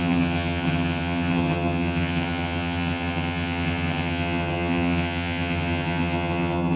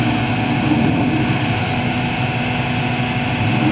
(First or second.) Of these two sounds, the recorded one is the second